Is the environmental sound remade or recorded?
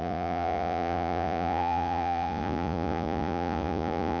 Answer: remade